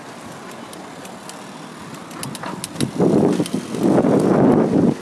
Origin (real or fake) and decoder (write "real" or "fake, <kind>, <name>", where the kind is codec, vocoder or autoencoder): real